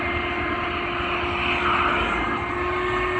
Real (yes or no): yes